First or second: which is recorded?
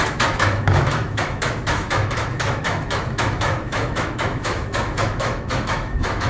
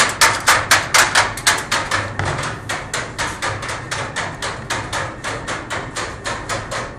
second